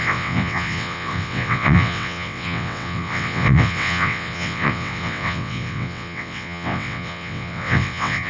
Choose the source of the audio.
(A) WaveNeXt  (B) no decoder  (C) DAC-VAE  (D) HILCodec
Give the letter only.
A